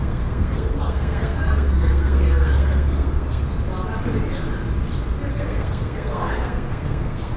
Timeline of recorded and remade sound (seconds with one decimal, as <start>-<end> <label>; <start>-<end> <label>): 0.0-3.4 remade; 3.4-5.3 recorded; 5.3-7.4 remade